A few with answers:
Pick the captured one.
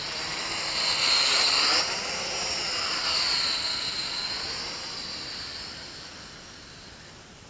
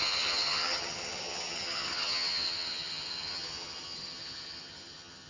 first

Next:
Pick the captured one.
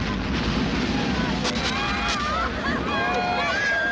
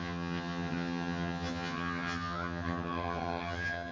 first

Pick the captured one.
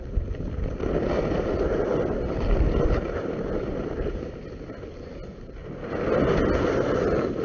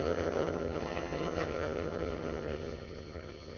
first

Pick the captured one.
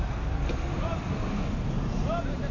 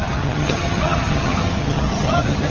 first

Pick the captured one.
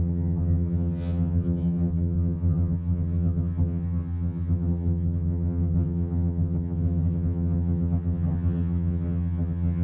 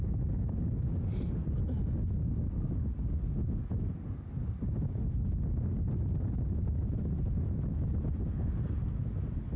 second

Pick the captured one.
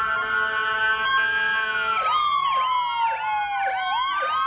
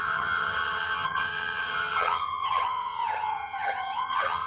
first